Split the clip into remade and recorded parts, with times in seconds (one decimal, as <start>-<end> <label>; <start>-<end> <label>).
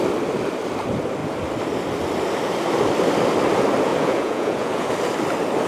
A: 0.0-3.9 recorded; 3.9-4.9 remade; 4.9-5.7 recorded